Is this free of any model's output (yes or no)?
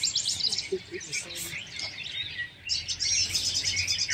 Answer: yes